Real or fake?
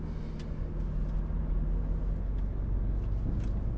real